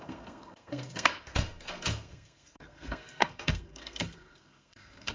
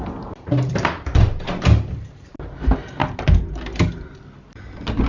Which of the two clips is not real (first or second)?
first